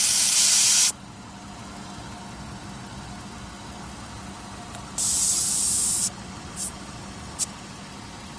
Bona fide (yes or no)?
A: yes